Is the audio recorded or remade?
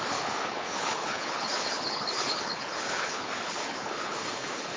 remade